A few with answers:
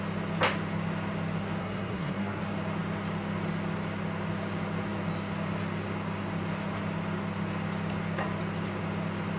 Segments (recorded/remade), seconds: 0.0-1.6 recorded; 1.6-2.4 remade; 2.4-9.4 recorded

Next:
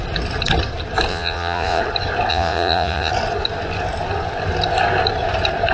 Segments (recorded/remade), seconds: 0.0-1.1 recorded; 1.1-1.8 remade; 1.8-2.3 recorded; 2.3-3.1 remade; 3.1-5.7 recorded

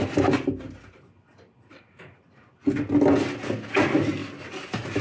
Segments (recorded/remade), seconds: 0.0-5.0 recorded

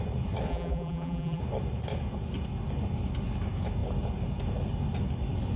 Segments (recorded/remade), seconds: 0.0-0.5 recorded; 0.5-1.4 remade; 1.4-5.6 recorded

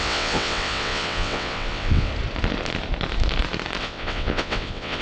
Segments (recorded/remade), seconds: 0.0-2.1 remade; 2.1-3.8 recorded; 3.8-5.0 remade